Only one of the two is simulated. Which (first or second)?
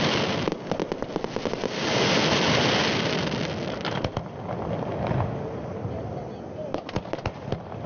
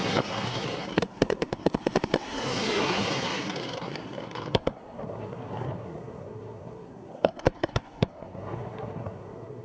second